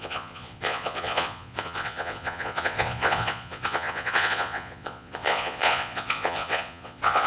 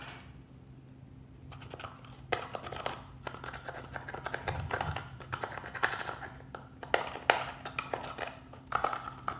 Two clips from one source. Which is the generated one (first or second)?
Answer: first